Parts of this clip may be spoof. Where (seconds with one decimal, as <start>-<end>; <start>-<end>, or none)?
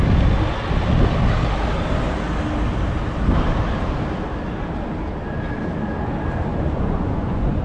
6.5-7.6